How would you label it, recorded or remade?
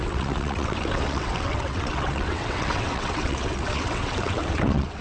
remade